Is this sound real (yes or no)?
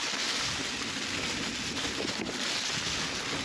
yes